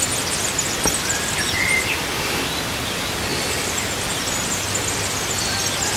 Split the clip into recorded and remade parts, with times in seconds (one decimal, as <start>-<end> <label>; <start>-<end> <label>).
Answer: 0.0-6.0 recorded